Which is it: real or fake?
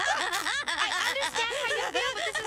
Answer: fake